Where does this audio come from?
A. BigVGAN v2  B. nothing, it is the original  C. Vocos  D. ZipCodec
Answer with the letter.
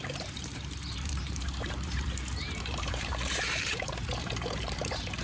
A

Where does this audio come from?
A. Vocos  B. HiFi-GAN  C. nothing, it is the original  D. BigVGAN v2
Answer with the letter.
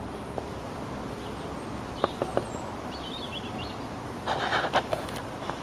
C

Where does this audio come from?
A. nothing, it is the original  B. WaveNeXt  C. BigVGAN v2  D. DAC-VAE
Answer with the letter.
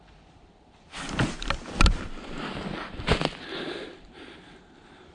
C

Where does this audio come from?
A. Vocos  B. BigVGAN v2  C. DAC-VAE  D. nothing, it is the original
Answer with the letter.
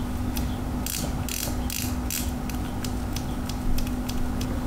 D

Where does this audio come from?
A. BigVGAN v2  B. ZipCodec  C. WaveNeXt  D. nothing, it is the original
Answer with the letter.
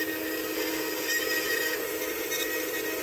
D